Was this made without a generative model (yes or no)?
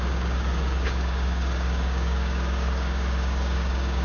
no